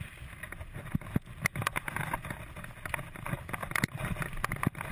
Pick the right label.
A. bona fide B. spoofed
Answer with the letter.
A